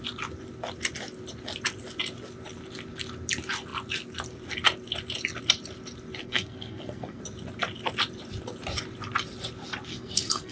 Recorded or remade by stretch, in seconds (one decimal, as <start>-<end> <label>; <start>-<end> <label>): 0.0-6.2 recorded; 6.2-7.2 remade; 7.2-9.9 recorded; 9.9-10.5 remade